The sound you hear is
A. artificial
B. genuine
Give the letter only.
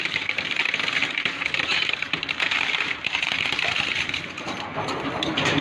A